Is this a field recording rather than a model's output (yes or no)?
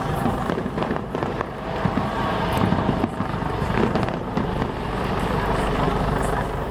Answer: no